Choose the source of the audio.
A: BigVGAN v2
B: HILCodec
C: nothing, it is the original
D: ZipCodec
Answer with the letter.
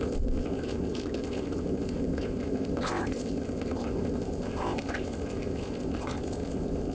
D